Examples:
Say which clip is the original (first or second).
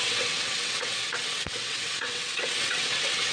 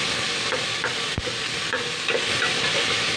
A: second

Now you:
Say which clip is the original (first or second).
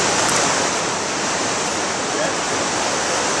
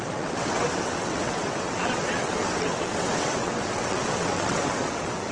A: first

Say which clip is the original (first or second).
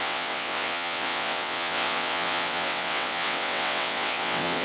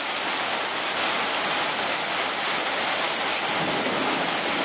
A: second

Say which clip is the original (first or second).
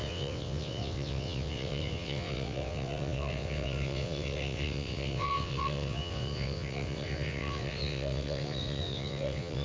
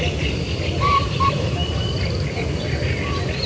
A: second